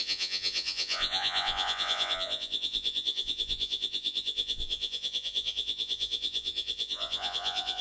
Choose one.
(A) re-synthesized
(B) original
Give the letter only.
A